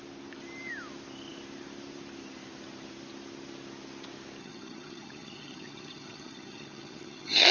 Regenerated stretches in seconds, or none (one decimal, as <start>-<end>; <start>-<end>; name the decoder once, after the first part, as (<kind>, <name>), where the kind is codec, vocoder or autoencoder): 4.4-7.5 (vocoder, HiFi-GAN)